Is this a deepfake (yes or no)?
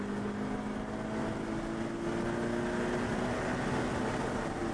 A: no